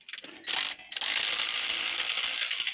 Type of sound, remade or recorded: recorded